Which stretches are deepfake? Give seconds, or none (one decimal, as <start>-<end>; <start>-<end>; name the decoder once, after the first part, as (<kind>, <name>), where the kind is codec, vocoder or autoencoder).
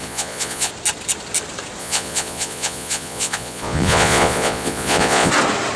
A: 0.0-0.7 (vocoder, Vocos); 1.8-5.3